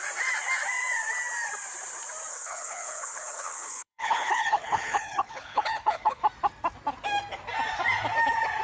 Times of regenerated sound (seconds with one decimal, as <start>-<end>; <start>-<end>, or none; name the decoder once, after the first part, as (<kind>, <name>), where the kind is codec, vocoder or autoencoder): 2.3-6.2 (codec, HILCodec)